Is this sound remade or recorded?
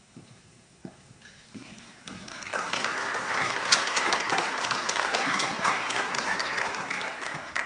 remade